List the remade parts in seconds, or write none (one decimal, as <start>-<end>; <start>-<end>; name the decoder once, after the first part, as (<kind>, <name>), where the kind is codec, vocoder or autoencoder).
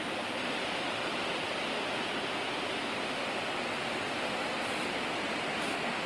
none